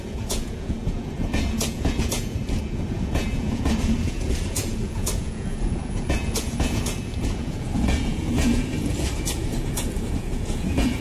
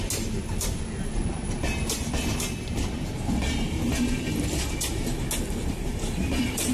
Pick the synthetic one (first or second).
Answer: first